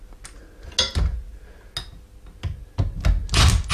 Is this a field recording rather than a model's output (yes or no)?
yes